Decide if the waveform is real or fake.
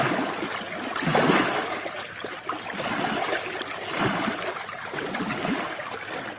real